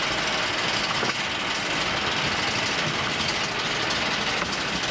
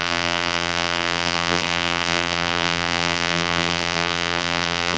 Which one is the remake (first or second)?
second